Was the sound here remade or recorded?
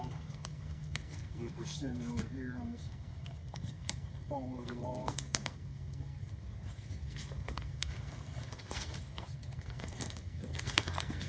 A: remade